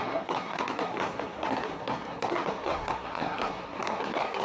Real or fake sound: fake